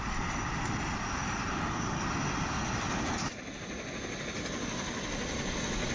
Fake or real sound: real